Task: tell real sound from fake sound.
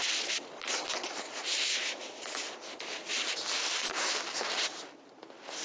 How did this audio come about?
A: real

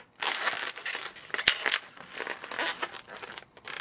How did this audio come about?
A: real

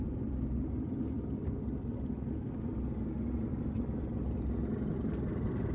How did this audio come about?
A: real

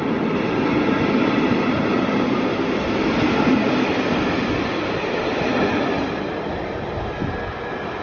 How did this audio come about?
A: real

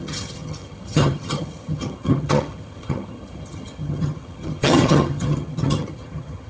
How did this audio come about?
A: fake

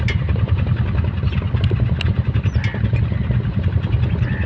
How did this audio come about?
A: real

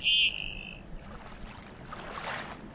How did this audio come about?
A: real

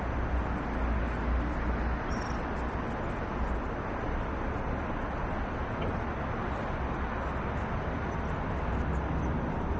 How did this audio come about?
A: real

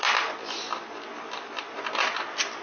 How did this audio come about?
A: real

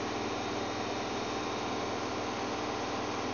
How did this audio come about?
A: real